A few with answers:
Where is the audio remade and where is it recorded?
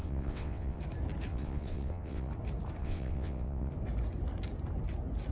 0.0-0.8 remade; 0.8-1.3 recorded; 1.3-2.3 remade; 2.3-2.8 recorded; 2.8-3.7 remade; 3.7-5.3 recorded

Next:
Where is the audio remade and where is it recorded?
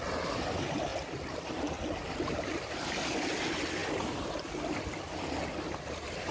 0.0-6.3 recorded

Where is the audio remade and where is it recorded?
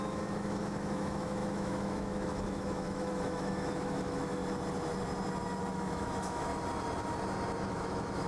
0.0-4.4 remade; 4.4-5.7 recorded; 5.7-6.5 remade; 6.5-7.6 recorded; 7.6-8.3 remade